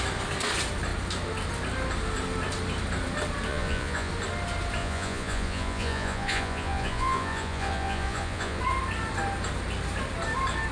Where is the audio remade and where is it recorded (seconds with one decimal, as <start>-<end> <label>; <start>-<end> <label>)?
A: 0.0-3.5 recorded; 3.5-4.1 remade; 4.1-4.8 recorded; 4.8-8.6 remade; 8.6-10.7 recorded